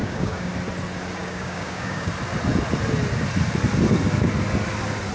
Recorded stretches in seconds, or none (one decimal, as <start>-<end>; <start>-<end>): 0.5-1.2; 2.1-5.1